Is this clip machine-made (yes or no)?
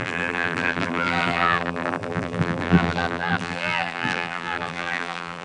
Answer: yes